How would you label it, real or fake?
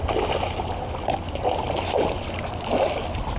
real